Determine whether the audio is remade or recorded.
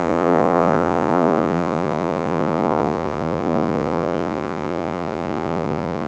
remade